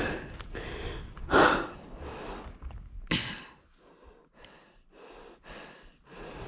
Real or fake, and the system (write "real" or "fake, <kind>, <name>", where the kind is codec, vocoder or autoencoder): real